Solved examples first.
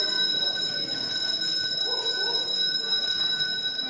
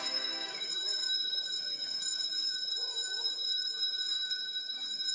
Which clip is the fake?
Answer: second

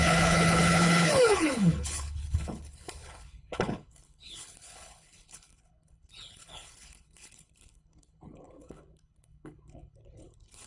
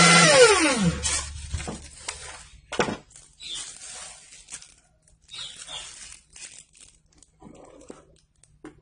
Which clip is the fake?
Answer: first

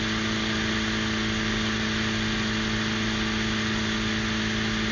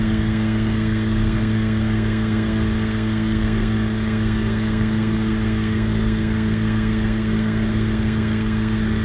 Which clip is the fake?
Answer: second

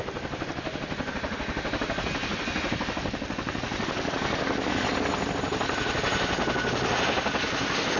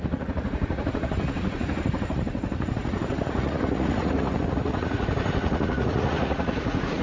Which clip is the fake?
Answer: second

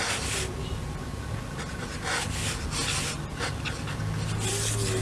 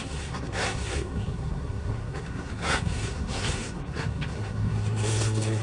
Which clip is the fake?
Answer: second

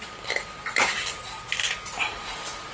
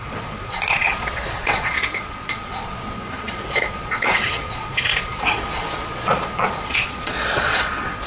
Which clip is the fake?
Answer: second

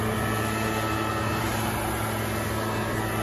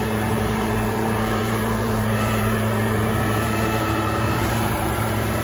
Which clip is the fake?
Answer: second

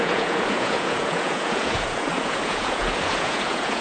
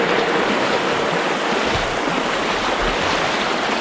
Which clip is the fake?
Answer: first